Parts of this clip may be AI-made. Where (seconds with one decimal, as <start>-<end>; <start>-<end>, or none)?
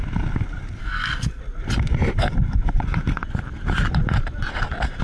0.8-1.4